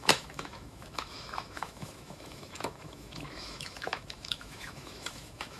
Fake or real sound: fake